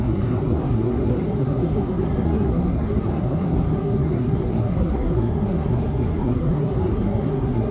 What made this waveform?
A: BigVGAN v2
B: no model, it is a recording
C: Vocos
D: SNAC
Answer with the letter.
D